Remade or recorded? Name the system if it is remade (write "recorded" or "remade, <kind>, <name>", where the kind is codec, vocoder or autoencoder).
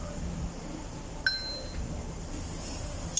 recorded